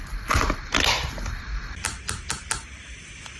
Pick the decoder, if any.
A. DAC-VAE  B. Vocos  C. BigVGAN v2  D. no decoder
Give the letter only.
D